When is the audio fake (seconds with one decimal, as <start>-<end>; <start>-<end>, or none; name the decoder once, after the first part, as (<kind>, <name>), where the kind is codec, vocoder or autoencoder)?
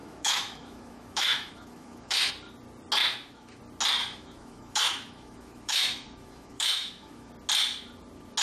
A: 0.0-2.3 (autoencoder, DAC-VAE); 3.1-3.6; 4.0-7.3